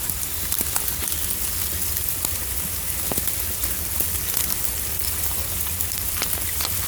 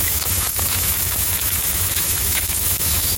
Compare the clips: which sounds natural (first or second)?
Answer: first